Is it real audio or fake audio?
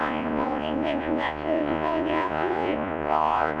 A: fake